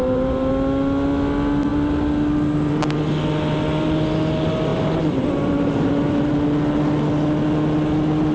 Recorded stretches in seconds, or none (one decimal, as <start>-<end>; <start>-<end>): 0.5-4.7; 6.3-8.3